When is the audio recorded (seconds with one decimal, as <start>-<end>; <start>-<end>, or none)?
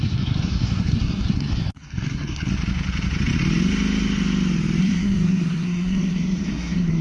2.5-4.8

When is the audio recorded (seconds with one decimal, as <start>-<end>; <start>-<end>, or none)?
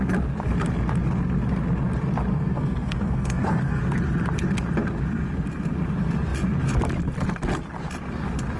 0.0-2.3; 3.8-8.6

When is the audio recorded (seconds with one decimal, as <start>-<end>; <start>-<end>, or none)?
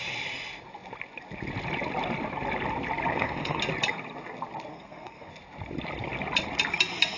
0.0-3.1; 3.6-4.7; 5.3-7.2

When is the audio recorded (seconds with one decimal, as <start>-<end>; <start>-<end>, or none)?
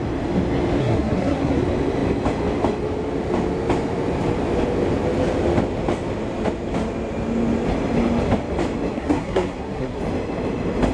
0.0-0.8; 1.6-8.9; 10.0-10.9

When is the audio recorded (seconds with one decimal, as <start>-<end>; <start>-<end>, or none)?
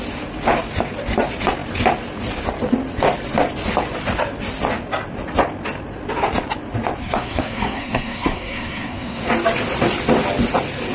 0.0-7.0; 9.2-10.9